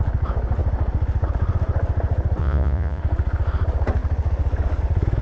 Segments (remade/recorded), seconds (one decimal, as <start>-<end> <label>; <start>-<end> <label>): 0.0-2.4 recorded; 2.4-3.0 remade; 3.0-5.2 recorded